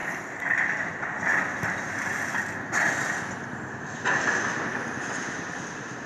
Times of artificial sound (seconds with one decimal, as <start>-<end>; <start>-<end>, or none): none